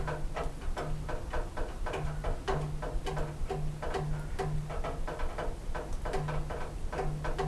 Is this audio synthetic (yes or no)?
no